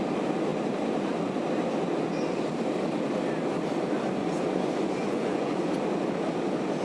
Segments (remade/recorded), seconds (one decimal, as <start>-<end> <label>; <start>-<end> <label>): 0.0-4.2 recorded; 4.2-5.7 remade; 5.7-6.8 recorded